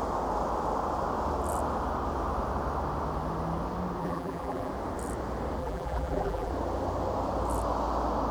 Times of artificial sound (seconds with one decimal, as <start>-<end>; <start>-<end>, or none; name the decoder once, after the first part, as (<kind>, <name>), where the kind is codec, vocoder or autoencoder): 4.0-4.7 (vocoder, BigVGAN v2); 5.6-6.5